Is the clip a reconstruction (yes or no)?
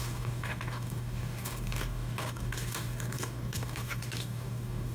yes